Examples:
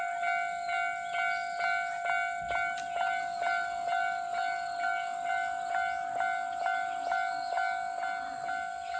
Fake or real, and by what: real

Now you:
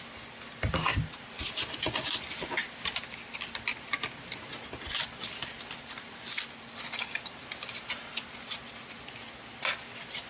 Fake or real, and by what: real